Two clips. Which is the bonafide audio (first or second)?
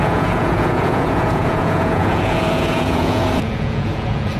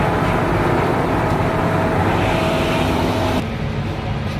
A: second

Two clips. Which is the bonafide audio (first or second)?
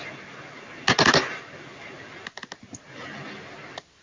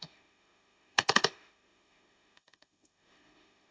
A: first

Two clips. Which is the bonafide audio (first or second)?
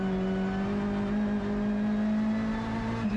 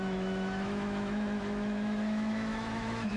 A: first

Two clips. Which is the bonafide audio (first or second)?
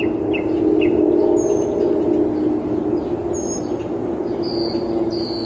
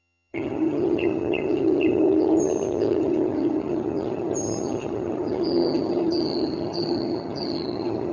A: first